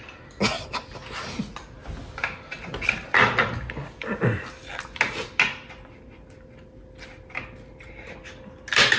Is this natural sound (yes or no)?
yes